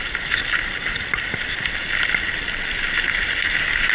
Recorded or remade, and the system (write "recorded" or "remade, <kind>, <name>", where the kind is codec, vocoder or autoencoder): recorded